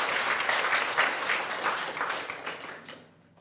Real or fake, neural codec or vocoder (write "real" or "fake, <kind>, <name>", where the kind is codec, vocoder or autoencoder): real